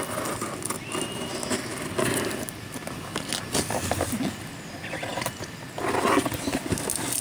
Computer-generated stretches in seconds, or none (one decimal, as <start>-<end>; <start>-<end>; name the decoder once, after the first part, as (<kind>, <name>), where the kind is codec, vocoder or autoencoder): none